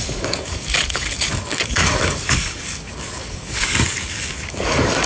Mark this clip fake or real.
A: fake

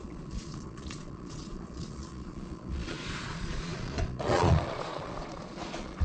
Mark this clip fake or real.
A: fake